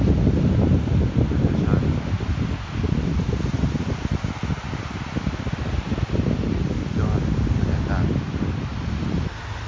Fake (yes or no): no